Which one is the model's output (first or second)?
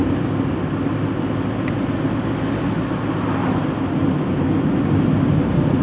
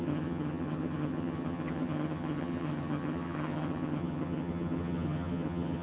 second